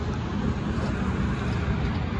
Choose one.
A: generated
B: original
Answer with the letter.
B